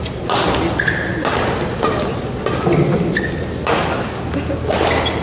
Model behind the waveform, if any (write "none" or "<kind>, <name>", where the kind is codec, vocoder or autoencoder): none